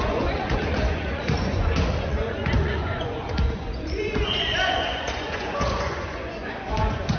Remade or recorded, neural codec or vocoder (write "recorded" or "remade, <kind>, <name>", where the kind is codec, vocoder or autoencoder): remade, vocoder, Vocos